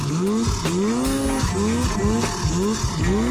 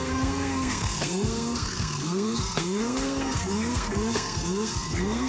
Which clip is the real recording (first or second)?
first